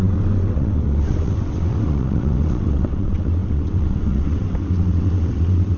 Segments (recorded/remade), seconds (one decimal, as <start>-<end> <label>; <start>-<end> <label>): 0.0-5.8 remade